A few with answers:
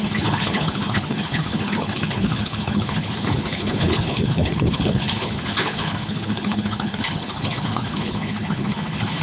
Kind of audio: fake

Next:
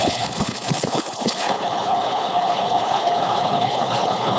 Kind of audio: fake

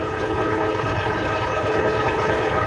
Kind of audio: fake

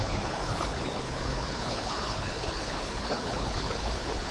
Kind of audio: fake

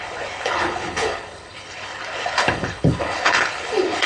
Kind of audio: fake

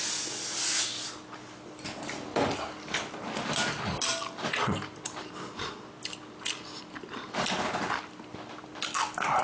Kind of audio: real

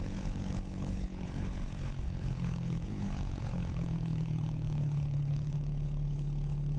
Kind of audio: fake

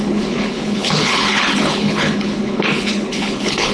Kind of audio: fake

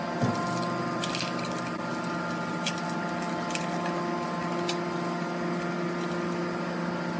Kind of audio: real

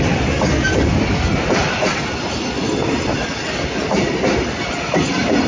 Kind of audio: real